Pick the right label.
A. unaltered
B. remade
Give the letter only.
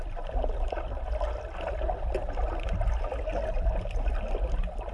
A